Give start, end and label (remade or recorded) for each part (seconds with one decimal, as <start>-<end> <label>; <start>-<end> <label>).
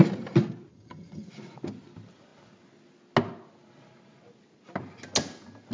0.0-0.7 recorded; 0.7-1.3 remade; 1.3-5.7 recorded